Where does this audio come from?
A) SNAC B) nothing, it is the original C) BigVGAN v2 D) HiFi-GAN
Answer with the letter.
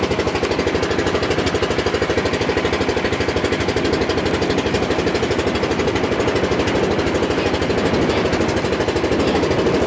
B